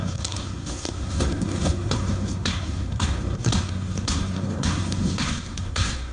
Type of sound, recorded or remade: remade